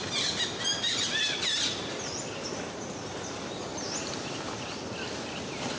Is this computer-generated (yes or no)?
no